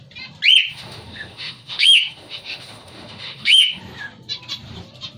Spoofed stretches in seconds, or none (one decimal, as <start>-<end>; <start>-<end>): 0.7-3.8